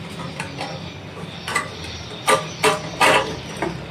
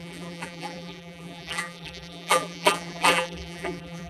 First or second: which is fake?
second